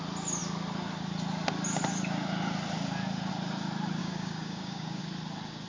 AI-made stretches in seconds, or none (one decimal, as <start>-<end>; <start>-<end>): 4.0-5.0